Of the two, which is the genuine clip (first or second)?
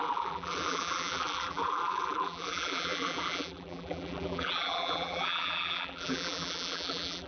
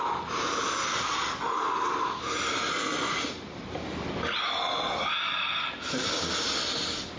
second